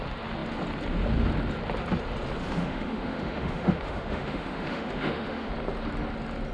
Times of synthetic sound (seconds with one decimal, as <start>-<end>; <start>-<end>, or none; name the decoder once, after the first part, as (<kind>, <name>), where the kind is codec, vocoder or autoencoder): 2.4-5.5 (autoencoder, DAC-VAE)